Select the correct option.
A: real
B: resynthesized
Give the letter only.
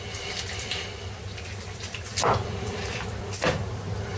B